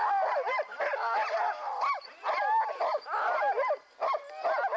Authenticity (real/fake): real